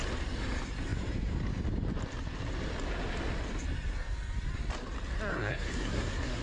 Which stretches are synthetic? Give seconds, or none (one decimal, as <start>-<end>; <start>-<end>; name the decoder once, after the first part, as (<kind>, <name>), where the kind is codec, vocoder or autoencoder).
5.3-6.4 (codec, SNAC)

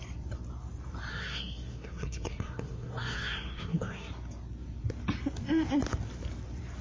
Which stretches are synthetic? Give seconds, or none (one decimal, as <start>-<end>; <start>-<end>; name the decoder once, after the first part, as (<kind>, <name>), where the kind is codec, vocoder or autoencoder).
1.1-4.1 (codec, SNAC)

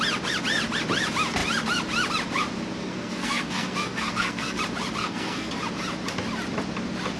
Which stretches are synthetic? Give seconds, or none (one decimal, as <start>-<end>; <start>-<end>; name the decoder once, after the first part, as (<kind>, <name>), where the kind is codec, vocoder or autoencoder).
2.8-4.6 (codec, SNAC); 5.0-5.5